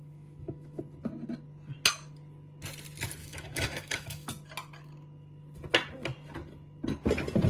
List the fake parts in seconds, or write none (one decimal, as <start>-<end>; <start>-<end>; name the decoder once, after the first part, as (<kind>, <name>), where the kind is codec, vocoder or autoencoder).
0.0-0.8 (autoencoder, DAC-VAE); 3.2-4.3